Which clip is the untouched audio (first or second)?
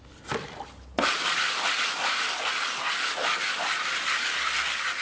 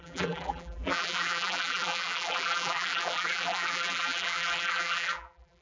first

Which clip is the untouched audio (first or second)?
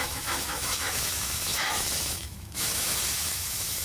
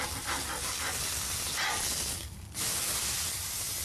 second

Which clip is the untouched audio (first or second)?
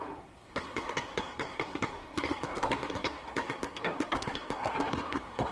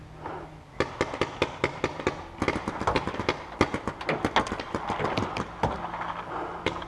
second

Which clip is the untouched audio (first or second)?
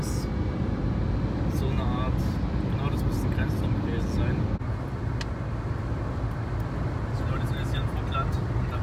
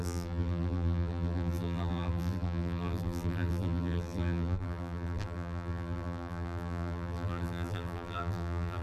first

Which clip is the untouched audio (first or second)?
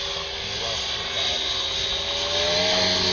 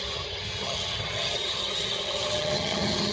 first